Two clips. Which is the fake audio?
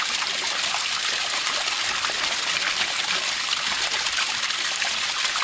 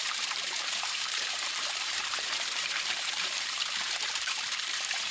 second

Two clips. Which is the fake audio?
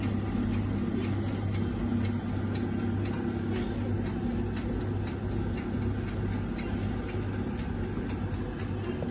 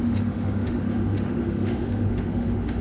second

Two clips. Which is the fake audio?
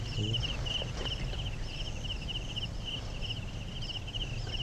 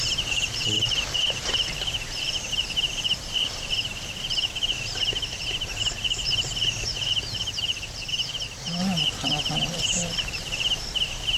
second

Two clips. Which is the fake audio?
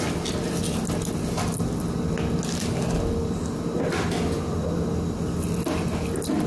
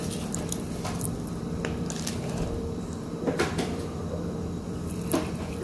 second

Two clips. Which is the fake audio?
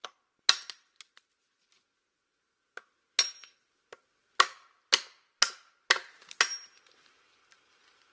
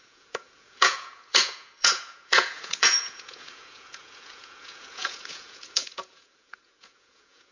second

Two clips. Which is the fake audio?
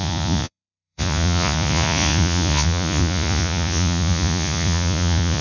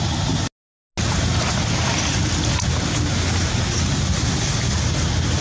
first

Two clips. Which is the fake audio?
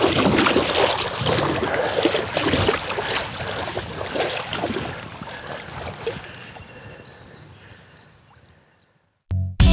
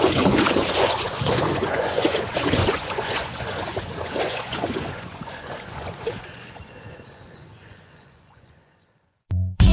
second